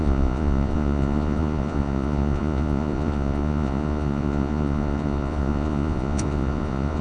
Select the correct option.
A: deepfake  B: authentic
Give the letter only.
A